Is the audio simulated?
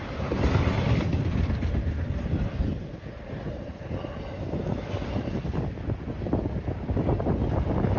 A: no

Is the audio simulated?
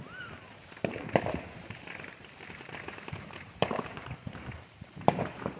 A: yes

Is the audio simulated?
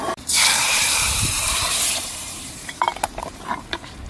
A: yes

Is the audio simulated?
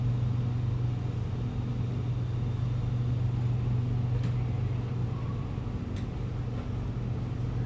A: no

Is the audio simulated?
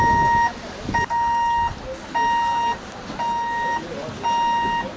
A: no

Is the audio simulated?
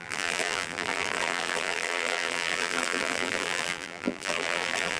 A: yes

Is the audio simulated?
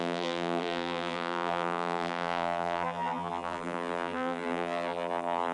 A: yes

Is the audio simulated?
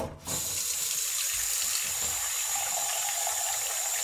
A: no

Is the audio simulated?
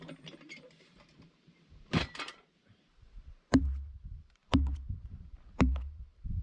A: yes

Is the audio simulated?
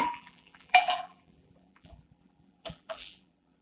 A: yes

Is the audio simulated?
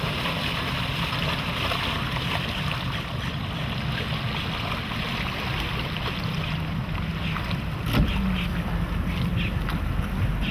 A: no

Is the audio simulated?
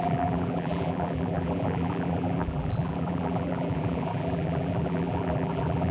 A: yes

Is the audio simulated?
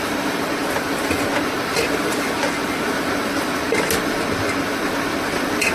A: no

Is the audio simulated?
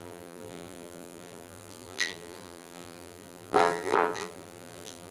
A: yes